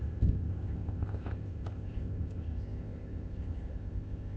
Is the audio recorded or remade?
remade